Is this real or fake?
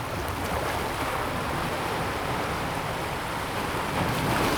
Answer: real